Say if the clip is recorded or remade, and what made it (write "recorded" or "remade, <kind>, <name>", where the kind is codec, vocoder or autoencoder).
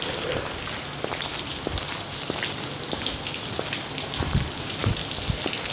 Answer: recorded